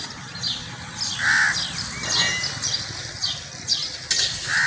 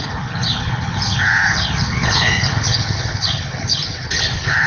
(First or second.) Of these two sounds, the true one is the first